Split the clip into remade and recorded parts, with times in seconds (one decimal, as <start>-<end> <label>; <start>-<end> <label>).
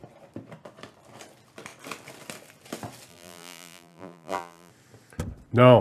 0.0-3.1 recorded; 3.1-4.7 remade; 4.7-5.8 recorded